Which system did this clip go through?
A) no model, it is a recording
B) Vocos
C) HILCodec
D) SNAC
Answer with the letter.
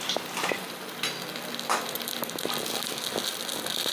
A